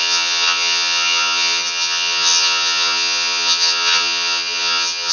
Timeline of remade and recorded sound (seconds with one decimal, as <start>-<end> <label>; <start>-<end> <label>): 0.0-5.1 remade

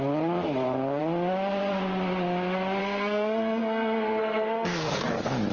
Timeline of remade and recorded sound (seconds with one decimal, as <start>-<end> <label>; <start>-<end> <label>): 0.0-2.8 recorded; 2.8-5.0 remade; 5.0-5.5 recorded

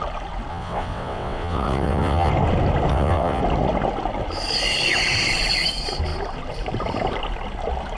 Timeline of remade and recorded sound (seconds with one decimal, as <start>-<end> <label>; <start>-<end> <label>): 0.0-0.5 recorded; 0.5-2.3 remade; 2.3-2.9 recorded; 2.9-3.4 remade; 3.4-8.0 recorded

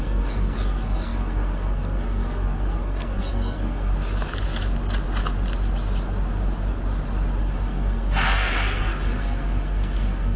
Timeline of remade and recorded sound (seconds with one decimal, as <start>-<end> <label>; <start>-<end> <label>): 0.0-3.9 remade; 3.9-7.4 recorded; 7.4-10.4 remade

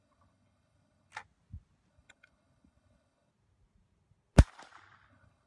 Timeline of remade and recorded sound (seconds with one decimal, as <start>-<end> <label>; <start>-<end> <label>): 0.0-1.1 remade; 1.1-1.9 recorded; 1.9-3.3 remade; 3.3-5.1 recorded; 5.1-5.5 remade